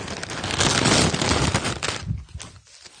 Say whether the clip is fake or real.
real